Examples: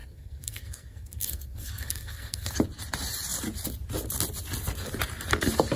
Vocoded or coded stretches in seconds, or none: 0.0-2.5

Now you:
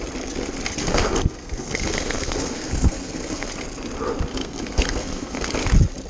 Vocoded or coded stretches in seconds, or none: 0.8-3.5; 4.4-5.5

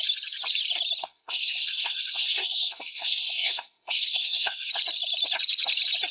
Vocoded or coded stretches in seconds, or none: 1.0-4.7

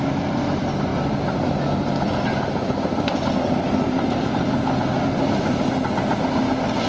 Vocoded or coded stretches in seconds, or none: none

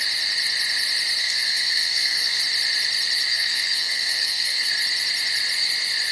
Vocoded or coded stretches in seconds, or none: 1.2-2.4; 3.3-4.7

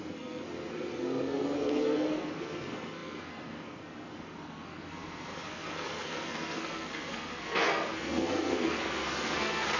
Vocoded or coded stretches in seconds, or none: 0.0-9.8

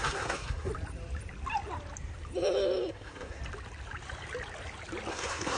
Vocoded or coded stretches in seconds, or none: 0.0-0.7; 2.9-3.4; 5.1-5.6